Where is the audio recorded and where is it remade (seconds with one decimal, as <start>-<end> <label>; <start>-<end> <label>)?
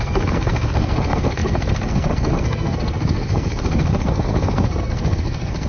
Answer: 0.0-5.7 remade